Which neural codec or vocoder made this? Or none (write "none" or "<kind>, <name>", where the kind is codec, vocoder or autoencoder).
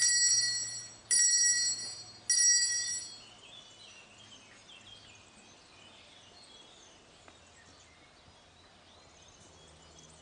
none